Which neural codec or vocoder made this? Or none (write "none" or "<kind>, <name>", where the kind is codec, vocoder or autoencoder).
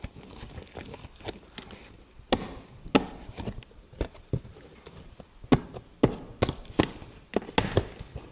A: none